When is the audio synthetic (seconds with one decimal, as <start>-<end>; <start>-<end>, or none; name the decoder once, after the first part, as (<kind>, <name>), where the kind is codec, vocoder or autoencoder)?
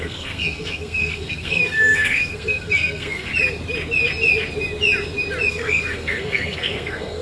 0.0-3.3 (codec, SNAC); 5.5-7.2